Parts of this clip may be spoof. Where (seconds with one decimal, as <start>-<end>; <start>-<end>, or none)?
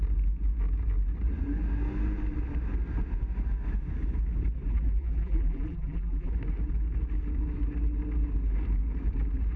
4.7-6.3